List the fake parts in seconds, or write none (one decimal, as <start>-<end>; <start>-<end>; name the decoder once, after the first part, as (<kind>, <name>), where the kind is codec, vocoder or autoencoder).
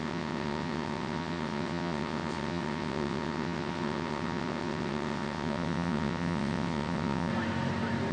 0.0-7.3 (vocoder, WaveNeXt)